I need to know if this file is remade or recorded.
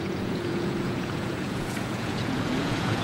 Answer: remade